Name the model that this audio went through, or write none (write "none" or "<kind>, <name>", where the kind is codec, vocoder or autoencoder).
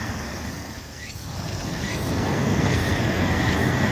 codec, SNAC